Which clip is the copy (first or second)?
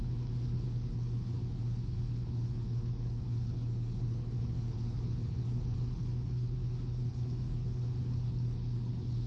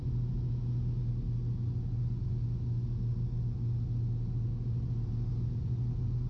first